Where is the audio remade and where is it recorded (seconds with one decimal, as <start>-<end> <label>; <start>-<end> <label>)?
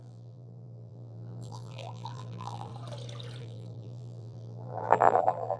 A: 0.0-2.7 remade; 2.7-3.4 recorded; 3.4-5.6 remade